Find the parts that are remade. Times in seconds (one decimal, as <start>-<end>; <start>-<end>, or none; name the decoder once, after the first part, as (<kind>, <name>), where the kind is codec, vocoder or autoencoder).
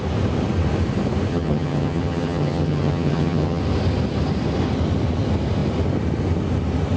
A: 1.3-3.6 (vocoder, HiFi-GAN)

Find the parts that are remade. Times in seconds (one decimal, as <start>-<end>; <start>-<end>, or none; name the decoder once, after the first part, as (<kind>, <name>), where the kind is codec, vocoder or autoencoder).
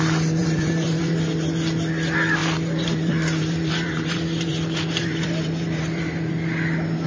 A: 0.4-1.5 (vocoder, BigVGAN v2); 2.4-6.3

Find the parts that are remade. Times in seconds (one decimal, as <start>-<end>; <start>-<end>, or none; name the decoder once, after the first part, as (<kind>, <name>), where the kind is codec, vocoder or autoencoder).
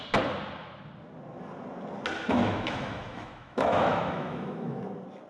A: 2.3-4.8 (autoencoder, DAC-VAE)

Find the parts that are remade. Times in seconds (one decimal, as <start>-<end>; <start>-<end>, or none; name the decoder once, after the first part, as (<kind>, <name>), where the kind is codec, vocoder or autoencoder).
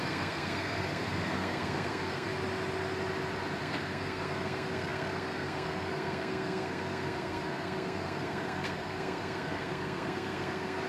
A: 0.0-2.3 (codec, SNAC); 3.6-10.9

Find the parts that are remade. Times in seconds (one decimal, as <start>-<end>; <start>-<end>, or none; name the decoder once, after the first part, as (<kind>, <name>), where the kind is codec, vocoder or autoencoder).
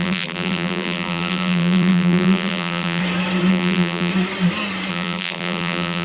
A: 0.0-3.0 (vocoder, BigVGAN v2); 3.5-4.1; 4.9-6.0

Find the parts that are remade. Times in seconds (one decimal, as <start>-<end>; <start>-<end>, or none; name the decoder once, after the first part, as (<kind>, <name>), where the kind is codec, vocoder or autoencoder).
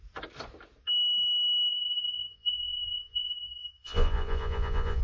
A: 1.7-5.0 (vocoder, Vocos)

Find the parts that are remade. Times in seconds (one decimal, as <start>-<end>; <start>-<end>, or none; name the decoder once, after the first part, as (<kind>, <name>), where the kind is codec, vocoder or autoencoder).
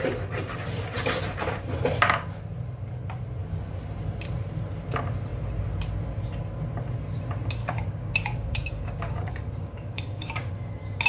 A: 7.6-10.5 (codec, DAC)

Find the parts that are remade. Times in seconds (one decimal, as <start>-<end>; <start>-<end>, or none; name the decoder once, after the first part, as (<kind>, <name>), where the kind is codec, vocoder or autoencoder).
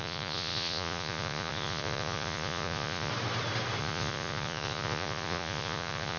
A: 0.0-3.1 (vocoder, Vocos); 3.8-6.2